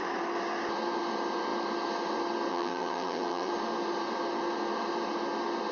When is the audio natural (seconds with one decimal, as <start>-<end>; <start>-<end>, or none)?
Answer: 0.0-2.5; 3.5-5.7